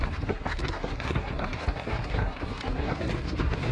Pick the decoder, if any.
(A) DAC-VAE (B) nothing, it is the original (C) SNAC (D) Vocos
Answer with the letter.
C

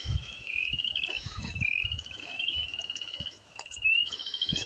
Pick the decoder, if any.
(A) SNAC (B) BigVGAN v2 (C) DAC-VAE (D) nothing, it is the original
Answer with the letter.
C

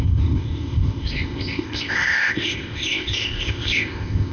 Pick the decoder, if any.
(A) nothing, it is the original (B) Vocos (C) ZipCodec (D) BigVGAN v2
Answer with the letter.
C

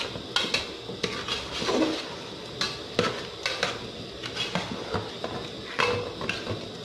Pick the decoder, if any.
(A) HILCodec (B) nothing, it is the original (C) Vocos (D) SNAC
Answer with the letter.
B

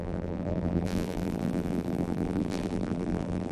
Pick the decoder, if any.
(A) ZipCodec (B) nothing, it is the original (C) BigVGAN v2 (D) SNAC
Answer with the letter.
C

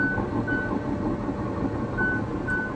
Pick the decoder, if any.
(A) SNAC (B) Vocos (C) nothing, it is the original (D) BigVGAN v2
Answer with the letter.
C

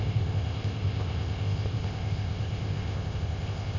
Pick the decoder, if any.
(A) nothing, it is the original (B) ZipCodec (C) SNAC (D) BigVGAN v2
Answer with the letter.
B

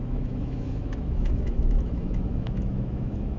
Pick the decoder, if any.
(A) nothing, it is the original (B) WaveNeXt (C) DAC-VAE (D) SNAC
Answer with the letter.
C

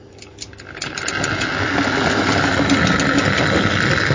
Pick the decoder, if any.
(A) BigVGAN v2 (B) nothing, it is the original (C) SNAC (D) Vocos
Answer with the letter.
B